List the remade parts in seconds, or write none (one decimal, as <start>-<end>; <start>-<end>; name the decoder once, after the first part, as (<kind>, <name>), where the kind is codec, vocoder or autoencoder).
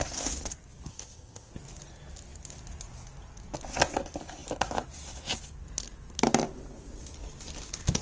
0.9-1.5 (codec, ZipCodec)